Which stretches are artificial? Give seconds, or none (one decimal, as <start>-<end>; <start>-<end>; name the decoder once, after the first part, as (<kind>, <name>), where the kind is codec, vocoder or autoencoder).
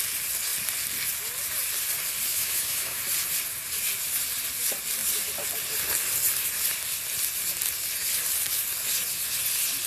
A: 2.3-3.0 (autoencoder, DAC-VAE)